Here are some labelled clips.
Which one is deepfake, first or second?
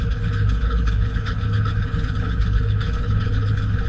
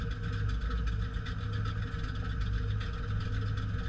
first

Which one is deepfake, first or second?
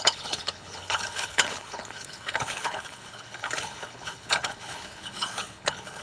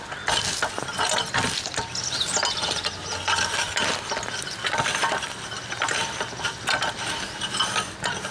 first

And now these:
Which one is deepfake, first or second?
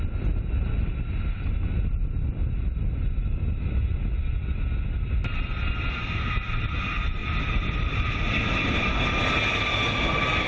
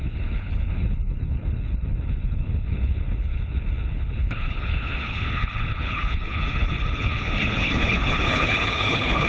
second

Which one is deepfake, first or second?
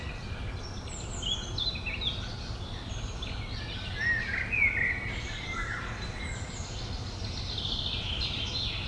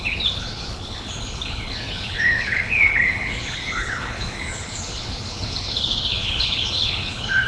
second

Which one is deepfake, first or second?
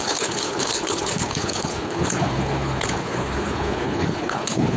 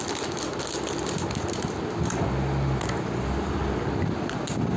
first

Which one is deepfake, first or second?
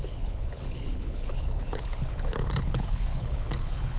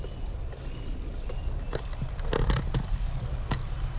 first